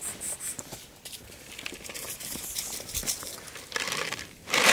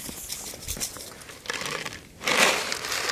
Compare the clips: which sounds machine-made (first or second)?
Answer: first